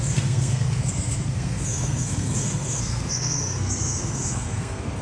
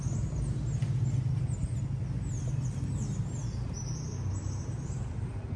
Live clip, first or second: second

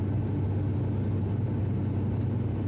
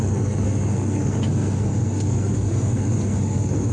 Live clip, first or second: first